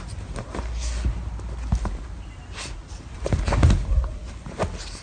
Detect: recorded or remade recorded